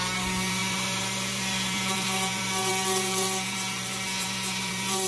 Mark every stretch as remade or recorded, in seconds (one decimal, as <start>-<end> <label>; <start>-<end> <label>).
0.0-5.1 remade